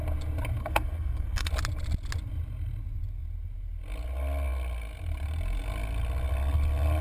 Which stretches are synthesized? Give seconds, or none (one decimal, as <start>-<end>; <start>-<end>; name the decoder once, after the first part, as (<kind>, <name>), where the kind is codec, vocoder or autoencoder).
0.6-1.5 (codec, SNAC)